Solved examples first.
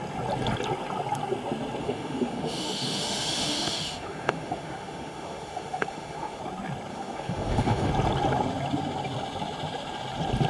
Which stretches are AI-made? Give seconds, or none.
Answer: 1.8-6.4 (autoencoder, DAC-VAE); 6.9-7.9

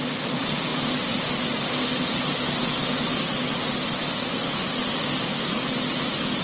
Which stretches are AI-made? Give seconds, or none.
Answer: none

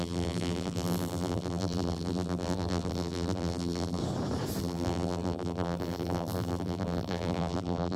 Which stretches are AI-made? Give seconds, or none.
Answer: 0.0-4.0 (vocoder, BigVGAN v2); 4.6-8.0

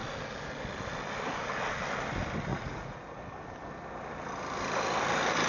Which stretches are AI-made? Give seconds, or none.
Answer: 2.5-3.2 (vocoder, Vocos)

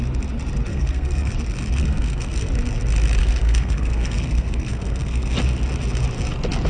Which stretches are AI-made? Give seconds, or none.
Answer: 0.7-1.3 (codec, SNAC); 1.8-2.5; 3.2-5.3

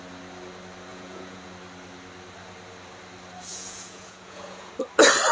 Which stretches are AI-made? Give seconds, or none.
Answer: 0.9-1.5 (vocoder, Vocos); 3.5-4.7

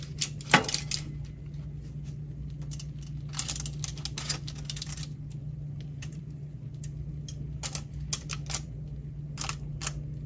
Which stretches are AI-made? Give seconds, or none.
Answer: 5.4-6.2 (vocoder, BigVGAN v2)